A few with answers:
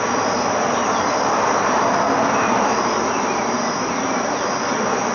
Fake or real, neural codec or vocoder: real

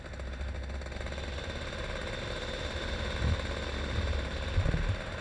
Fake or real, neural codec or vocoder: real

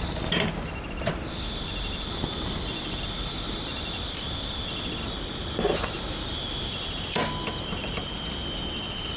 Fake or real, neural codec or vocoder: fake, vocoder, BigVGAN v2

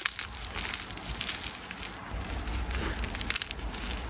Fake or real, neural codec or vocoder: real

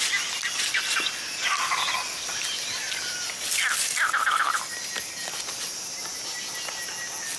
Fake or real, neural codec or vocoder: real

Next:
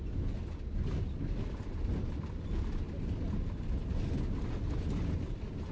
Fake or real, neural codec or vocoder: real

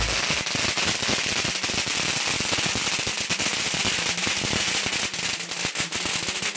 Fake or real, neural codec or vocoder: real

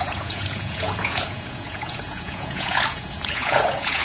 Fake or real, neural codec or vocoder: fake, vocoder, Vocos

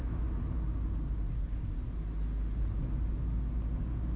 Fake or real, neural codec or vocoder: real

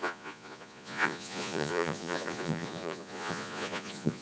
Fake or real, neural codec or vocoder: fake, vocoder, Vocos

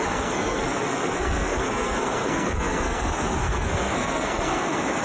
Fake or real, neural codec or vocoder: fake, codec, SNAC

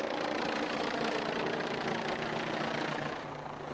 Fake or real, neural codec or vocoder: real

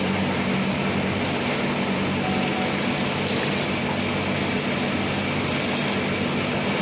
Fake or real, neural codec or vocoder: real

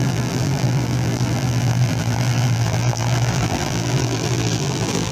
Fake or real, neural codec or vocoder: fake, vocoder, BigVGAN v2